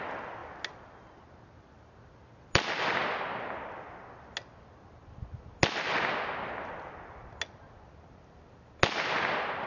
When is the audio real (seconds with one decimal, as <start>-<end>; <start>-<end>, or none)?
0.0-9.7